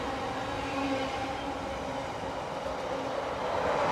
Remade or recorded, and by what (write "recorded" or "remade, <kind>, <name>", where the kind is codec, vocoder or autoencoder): recorded